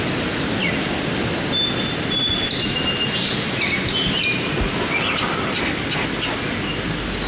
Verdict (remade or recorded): recorded